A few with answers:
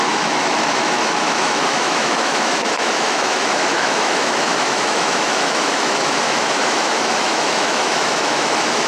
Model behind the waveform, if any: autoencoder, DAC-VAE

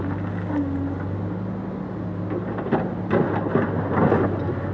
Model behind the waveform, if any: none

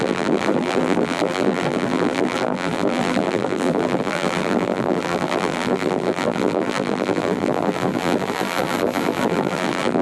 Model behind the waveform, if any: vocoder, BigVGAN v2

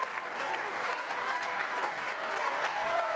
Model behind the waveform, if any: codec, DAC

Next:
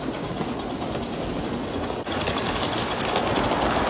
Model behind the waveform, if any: none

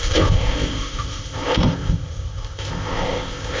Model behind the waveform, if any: codec, ZipCodec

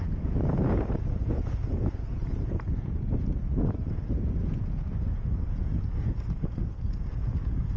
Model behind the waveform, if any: vocoder, Vocos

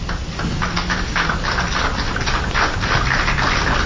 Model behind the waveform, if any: none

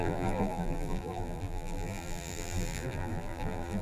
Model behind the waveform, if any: vocoder, BigVGAN v2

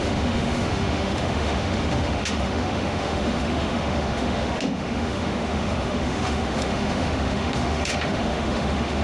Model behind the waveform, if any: autoencoder, DAC-VAE